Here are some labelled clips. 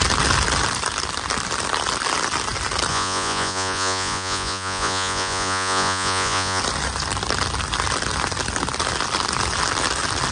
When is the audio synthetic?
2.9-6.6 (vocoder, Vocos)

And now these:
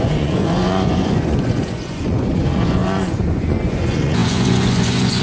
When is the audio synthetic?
0.0-5.2 (vocoder, Vocos)